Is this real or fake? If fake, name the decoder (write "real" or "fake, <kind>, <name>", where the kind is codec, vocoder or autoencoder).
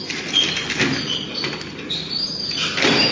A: real